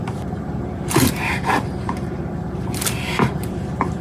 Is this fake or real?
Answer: fake